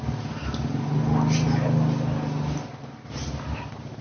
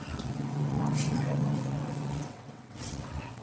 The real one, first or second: first